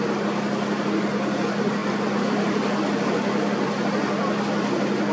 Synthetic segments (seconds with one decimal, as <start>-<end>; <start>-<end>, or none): none